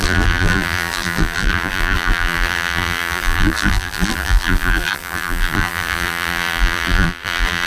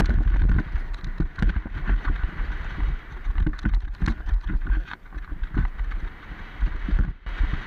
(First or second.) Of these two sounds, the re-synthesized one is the first